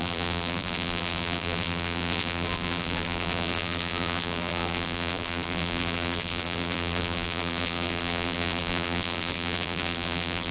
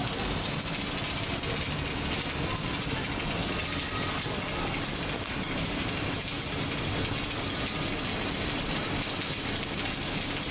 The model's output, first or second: first